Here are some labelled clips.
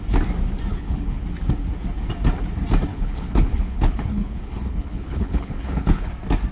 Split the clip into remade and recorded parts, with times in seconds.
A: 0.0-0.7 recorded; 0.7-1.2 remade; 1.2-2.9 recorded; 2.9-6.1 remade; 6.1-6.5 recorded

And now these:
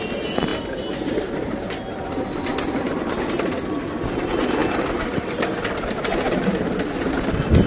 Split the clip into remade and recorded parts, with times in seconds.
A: 0.0-7.7 recorded

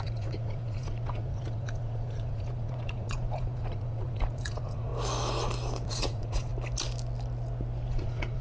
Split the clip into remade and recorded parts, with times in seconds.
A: 0.0-4.9 remade; 4.9-5.9 recorded; 5.9-6.5 remade; 6.5-7.9 recorded; 7.9-8.4 remade

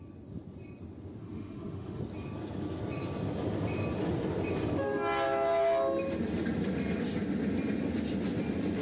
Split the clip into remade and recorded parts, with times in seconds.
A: 0.0-1.2 recorded; 1.2-2.0 remade; 2.0-8.8 recorded

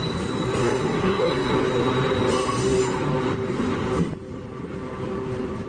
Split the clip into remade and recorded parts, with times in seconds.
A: 0.0-0.6 recorded; 0.6-1.5 remade; 1.5-5.7 recorded

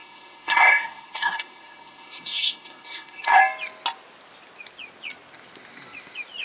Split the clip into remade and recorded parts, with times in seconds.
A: 0.0-3.4 remade; 3.4-6.4 recorded

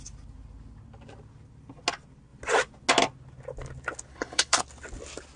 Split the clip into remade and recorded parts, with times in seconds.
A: 0.0-4.1 recorded; 4.1-4.6 remade; 4.6-5.4 recorded

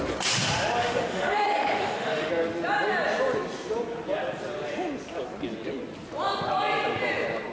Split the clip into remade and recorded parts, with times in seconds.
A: 0.0-0.8 recorded; 0.8-2.3 remade; 2.3-7.5 recorded